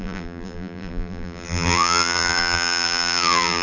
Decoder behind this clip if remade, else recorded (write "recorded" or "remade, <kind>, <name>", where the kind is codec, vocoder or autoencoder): remade, vocoder, BigVGAN v2